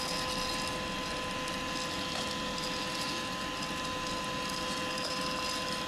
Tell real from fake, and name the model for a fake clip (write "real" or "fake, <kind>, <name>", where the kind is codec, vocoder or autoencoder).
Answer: real